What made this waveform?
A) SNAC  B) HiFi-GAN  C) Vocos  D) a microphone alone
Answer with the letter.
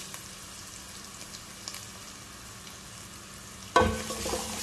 D